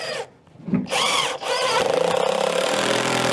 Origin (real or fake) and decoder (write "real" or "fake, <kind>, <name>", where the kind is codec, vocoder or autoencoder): fake, vocoder, BigVGAN v2